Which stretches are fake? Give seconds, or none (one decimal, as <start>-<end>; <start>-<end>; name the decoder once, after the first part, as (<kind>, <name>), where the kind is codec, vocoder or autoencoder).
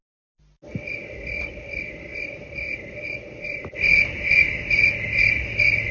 none